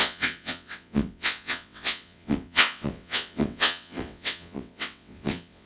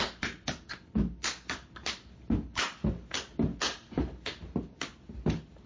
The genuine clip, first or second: second